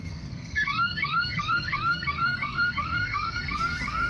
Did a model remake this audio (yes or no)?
yes